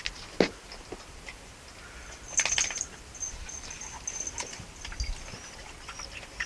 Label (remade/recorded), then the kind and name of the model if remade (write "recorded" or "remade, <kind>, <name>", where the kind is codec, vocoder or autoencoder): recorded